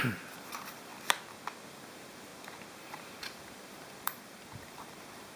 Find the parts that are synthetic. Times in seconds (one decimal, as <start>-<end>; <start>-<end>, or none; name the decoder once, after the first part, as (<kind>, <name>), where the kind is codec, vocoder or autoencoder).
0.0-0.9 (vocoder, BigVGAN v2); 1.7-2.3; 2.8-5.4

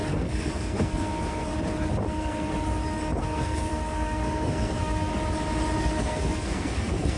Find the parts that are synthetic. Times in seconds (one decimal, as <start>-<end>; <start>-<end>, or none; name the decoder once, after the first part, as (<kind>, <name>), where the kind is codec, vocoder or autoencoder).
0.0-1.5 (codec, SNAC); 2.1-2.5; 3.2-5.1; 5.8-7.2

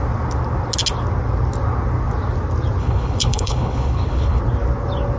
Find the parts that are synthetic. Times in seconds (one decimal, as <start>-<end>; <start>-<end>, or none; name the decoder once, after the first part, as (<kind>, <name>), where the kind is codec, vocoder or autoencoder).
2.8-4.4 (codec, HILCodec)

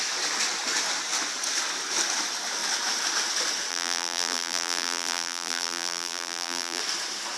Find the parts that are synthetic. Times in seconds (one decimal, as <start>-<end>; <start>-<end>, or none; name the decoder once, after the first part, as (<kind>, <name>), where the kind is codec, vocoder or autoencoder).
3.7-6.8 (vocoder, BigVGAN v2)

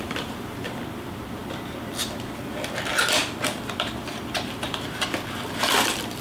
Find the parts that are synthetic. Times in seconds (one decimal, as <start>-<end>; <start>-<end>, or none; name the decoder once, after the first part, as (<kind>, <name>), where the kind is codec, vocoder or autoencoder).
0.0-2.9 (vocoder, BigVGAN v2); 3.4-6.2

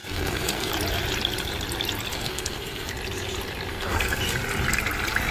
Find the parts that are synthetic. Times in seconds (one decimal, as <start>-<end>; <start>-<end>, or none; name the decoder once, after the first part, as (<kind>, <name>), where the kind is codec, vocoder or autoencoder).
0.0-0.7 (codec, SNAC); 2.1-2.9; 3.7-4.2

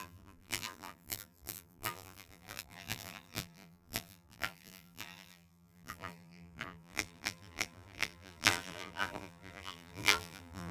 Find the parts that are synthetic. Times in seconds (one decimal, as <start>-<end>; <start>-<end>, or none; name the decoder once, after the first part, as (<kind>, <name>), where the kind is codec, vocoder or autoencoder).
0.0-10.7 (vocoder, BigVGAN v2)

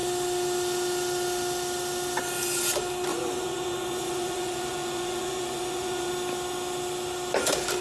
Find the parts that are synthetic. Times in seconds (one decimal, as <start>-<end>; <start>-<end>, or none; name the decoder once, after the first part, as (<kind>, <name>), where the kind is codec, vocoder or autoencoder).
3.1-6.1 (vocoder, Vocos)